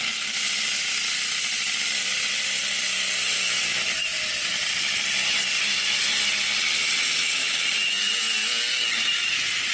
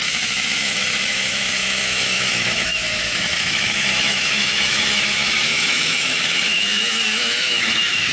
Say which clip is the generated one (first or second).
second